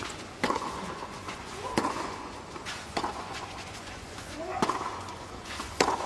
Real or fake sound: fake